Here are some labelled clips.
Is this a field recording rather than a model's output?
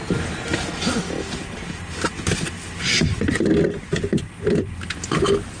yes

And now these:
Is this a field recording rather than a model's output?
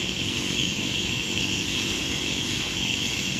no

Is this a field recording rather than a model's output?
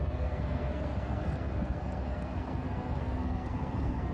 no